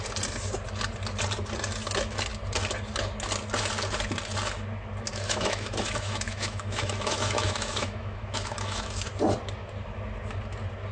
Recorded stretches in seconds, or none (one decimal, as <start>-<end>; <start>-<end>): 0.0-5.1; 9.1-10.9